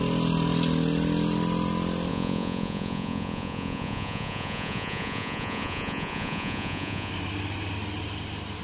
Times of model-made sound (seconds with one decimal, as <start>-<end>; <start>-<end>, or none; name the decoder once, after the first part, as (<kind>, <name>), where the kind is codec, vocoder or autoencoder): 2.1-7.1 (vocoder, Vocos)